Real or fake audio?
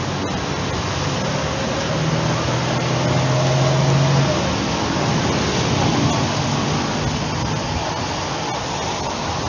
real